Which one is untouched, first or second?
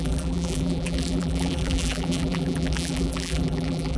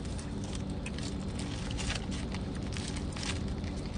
second